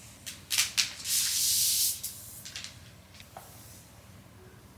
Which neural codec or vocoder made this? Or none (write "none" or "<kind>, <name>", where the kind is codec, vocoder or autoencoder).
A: none